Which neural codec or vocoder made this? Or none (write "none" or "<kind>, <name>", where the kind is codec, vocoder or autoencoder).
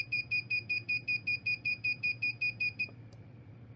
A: vocoder, BigVGAN v2